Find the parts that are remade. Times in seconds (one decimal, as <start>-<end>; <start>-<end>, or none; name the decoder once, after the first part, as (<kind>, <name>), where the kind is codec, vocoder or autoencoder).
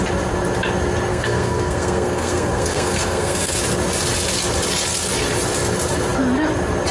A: 1.1-3.6 (codec, SNAC)